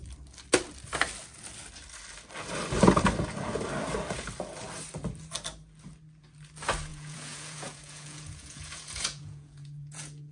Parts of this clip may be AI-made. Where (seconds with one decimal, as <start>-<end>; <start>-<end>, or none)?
6.9-10.3